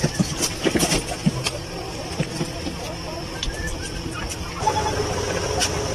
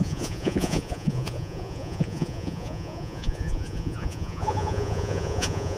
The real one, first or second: first